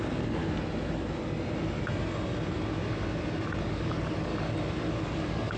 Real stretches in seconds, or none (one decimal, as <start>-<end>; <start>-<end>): 0.4-3.6; 4.3-4.9